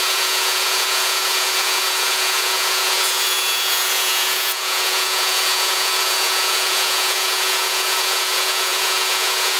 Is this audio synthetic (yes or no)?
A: yes